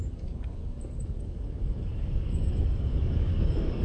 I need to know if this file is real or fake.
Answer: fake